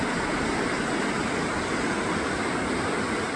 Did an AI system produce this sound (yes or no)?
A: no